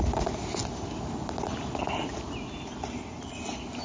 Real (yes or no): yes